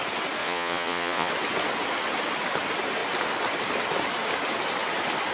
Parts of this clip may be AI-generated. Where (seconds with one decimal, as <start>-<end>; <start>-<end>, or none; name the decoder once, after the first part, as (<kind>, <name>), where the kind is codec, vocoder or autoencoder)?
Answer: 0.4-1.3 (vocoder, Vocos)